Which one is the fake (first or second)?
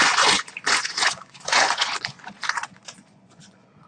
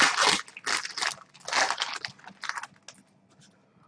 first